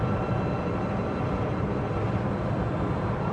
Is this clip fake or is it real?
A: fake